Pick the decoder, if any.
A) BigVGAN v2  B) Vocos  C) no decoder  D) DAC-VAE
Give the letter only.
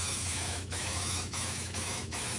D